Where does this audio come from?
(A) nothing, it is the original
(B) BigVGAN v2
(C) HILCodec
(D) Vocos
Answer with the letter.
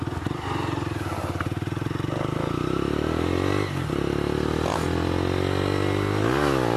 A